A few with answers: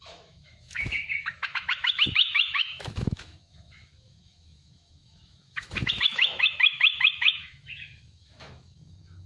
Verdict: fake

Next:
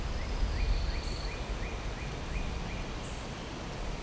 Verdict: real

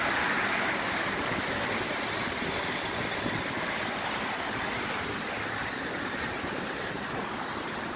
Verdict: real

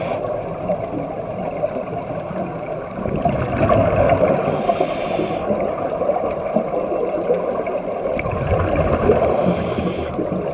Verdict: real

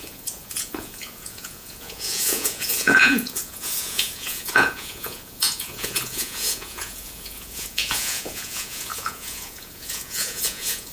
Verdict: fake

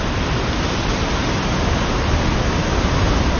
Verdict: real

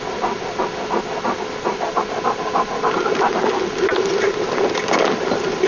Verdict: real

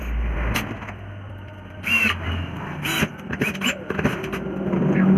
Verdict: real